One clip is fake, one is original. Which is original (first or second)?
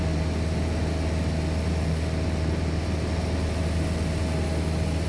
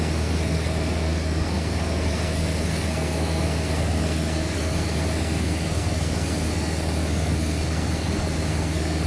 first